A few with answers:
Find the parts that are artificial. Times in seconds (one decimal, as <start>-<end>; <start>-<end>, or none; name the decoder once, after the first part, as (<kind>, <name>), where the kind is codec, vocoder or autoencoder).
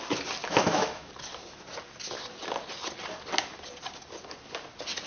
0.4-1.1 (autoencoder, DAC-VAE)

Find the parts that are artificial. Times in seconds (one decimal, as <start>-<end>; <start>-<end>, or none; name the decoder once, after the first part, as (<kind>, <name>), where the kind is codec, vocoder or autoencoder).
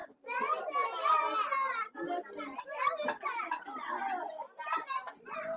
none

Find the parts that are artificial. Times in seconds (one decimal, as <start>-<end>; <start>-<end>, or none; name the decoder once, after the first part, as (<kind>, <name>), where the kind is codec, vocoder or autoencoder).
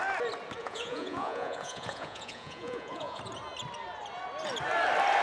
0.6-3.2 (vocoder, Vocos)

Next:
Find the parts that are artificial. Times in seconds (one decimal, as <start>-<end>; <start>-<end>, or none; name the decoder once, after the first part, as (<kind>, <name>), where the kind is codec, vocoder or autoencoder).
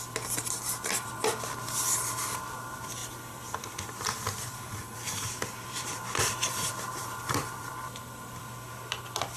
3.0-7.7 (vocoder, BigVGAN v2)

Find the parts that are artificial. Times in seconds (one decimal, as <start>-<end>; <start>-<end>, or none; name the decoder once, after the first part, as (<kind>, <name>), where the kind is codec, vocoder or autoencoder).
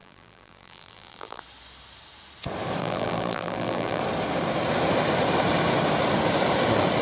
0.0-1.4 (vocoder, BigVGAN v2); 2.8-4.0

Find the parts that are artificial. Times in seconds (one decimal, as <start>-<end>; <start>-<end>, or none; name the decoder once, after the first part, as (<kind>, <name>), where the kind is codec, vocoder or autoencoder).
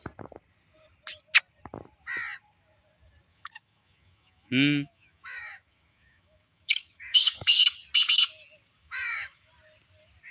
3.3-7.6 (autoencoder, DAC-VAE); 8.8-9.5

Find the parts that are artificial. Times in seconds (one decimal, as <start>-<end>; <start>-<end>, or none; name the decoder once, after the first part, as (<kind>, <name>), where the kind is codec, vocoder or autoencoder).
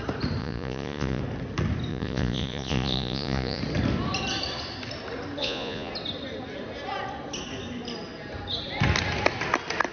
0.4-1.2 (vocoder, Vocos); 1.9-3.6; 5.4-5.9